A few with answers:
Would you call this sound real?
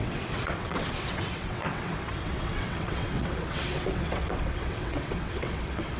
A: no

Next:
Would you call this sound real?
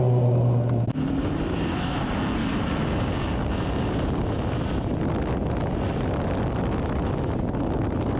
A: yes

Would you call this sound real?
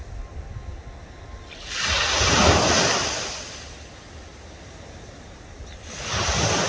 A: yes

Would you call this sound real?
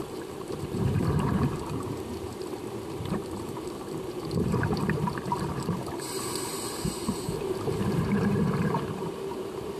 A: no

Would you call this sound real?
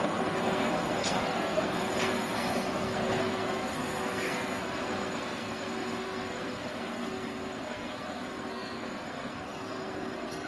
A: no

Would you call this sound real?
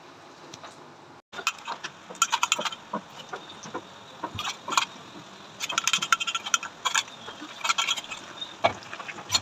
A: yes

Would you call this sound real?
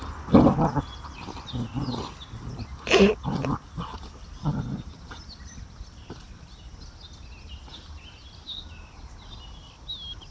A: yes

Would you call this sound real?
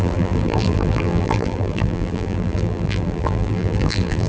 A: no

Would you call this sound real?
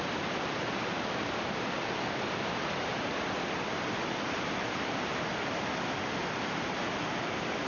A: yes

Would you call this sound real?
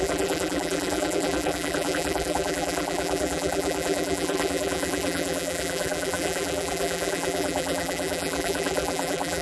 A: no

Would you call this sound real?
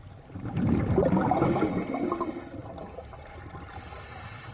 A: yes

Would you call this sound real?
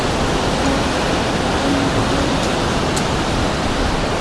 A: yes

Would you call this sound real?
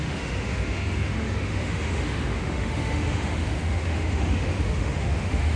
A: no